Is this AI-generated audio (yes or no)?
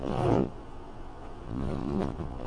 yes